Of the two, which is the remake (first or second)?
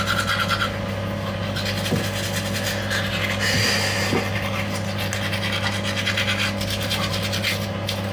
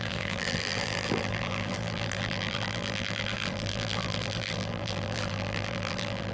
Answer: second